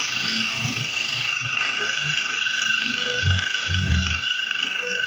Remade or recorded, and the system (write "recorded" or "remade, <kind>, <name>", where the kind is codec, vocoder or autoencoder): remade, codec, DAC